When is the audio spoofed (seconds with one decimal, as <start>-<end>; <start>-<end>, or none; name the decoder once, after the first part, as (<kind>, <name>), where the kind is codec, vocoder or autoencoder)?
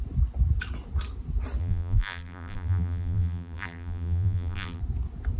1.6-4.8 (vocoder, BigVGAN v2)